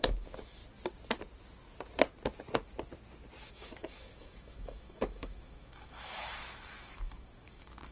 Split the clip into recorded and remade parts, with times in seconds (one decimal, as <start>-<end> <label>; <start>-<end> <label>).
0.0-0.6 remade; 0.6-3.5 recorded; 3.5-7.9 remade